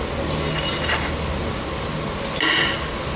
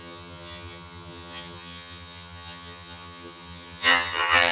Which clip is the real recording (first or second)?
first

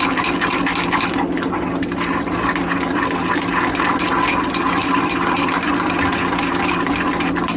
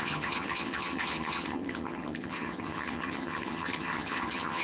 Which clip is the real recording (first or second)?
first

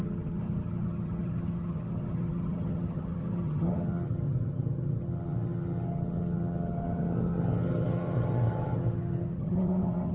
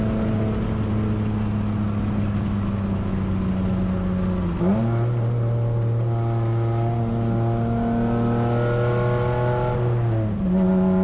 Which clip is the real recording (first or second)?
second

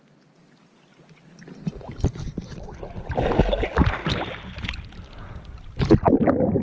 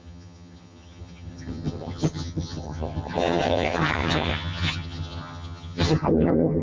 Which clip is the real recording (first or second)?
first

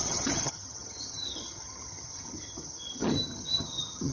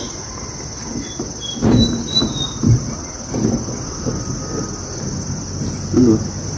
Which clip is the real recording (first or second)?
second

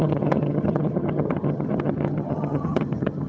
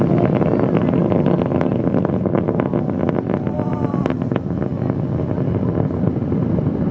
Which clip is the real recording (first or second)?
second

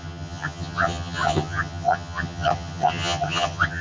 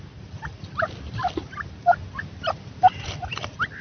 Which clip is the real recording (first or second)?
second